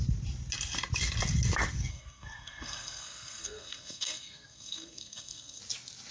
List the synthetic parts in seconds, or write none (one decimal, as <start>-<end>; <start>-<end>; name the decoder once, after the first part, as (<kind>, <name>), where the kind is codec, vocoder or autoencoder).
1.9-5.6 (codec, SNAC)